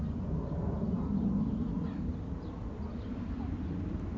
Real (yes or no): yes